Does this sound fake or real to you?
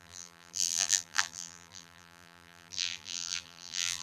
fake